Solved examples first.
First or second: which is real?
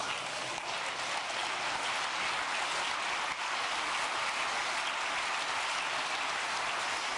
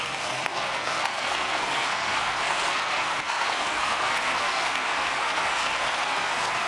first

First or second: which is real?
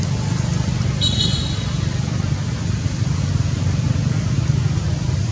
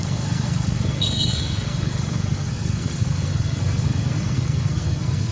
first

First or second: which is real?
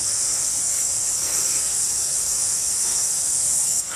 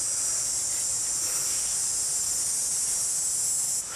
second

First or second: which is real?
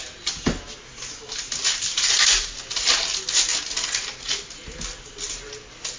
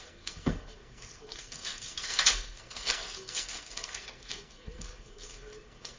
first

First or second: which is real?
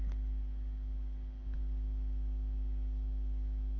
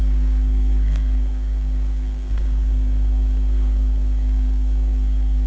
first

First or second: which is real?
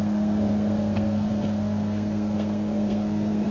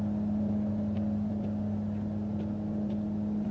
second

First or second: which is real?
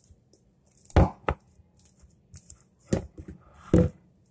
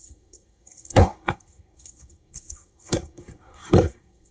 first